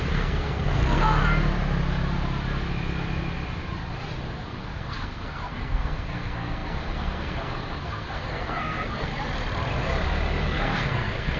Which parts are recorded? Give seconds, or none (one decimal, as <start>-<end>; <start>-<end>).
1.2-4.5; 9.1-10.4